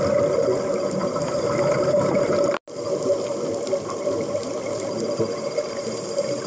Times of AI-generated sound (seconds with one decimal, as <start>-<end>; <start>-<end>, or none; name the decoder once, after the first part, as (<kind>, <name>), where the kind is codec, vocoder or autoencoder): none